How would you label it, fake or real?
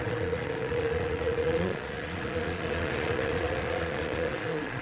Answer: fake